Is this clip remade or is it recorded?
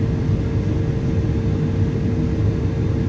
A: recorded